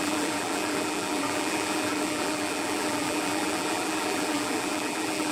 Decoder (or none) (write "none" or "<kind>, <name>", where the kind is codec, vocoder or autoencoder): vocoder, BigVGAN v2